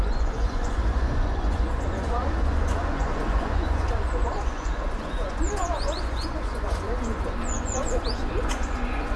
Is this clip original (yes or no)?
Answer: no